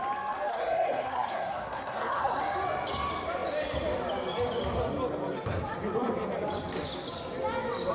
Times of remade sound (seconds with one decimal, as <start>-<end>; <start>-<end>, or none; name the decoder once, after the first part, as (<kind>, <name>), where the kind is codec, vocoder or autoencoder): 0.5-2.4 (codec, SNAC)